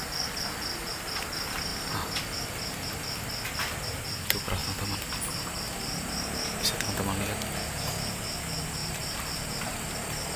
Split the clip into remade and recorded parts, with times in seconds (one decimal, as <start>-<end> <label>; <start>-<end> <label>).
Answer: 0.0-8.8 recorded; 8.8-9.9 remade; 9.9-10.4 recorded